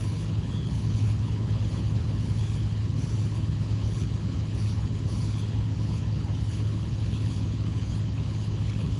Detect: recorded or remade remade